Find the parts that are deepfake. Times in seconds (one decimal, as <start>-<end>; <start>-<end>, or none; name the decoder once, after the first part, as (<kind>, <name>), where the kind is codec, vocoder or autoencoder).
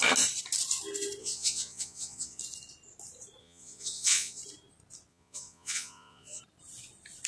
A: 1.2-2.4 (vocoder, Vocos); 3.4-4.4; 5.1-6.4